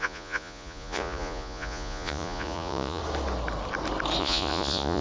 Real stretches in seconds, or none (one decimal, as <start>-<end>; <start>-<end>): 3.0-4.2